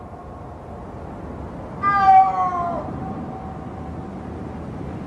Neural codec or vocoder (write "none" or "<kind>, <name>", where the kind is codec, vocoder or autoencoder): none